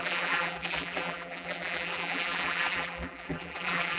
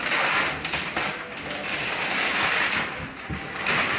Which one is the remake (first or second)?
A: first